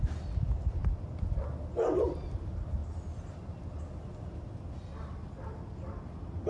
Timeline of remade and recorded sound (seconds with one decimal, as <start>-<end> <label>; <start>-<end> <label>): 0.0-6.5 recorded